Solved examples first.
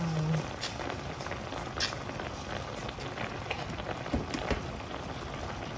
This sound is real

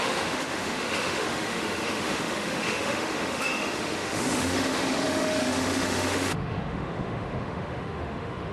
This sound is fake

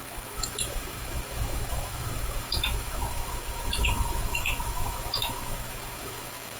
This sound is fake